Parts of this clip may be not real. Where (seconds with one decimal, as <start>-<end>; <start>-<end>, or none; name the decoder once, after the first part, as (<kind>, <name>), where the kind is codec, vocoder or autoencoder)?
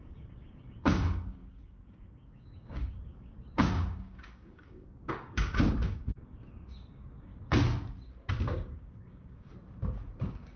0.0-7.3 (codec, DAC); 8.4-9.5; 10.2-10.6